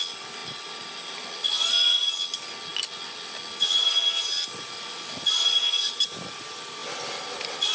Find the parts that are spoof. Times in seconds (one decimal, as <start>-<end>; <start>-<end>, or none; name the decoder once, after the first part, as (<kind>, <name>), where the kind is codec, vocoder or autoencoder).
none